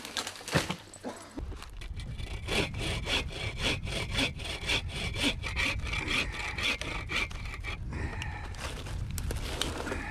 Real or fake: fake